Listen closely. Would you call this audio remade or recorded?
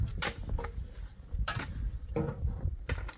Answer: recorded